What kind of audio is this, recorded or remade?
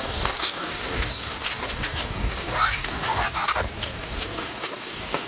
remade